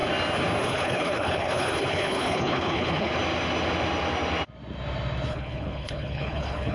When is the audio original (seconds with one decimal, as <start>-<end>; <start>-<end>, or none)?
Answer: 0.0-0.6; 3.1-5.3